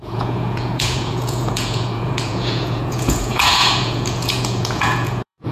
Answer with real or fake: fake